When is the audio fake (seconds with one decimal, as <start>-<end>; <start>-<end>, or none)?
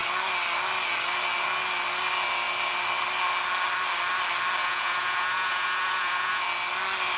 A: 4.6-6.4